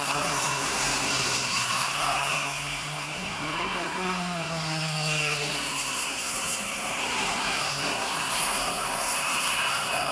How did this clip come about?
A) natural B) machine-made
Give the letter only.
B